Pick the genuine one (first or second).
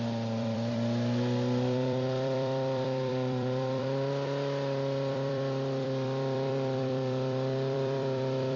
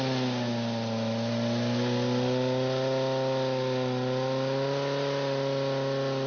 second